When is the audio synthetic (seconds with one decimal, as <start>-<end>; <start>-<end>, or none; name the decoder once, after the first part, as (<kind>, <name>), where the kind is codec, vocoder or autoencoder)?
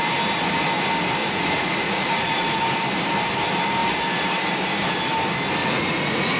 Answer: 1.2-2.6 (vocoder, Vocos); 5.6-6.4